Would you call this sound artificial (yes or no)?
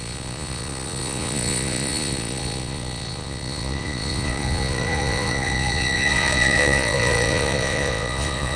yes